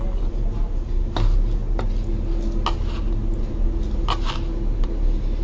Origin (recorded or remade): recorded